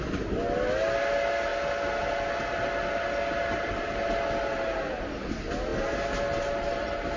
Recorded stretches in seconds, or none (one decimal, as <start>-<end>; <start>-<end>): 0.0-7.2